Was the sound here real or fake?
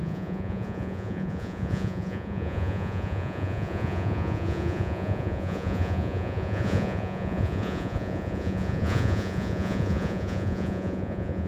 fake